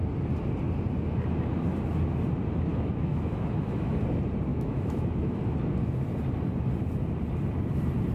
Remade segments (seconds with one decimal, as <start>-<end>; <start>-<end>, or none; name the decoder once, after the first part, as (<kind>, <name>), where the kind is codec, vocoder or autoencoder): 2.7-4.0 (autoencoder, DAC-VAE); 4.5-5.4